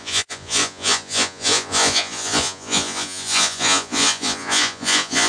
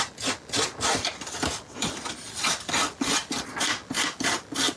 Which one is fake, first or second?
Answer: first